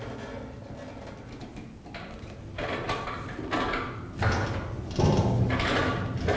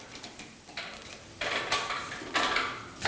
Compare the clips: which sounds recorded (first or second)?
first